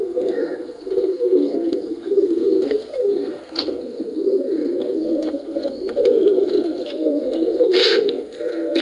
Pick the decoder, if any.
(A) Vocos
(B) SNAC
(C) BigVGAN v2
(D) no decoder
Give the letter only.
B